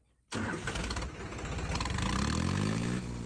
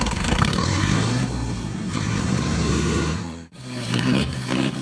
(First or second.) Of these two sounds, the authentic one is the first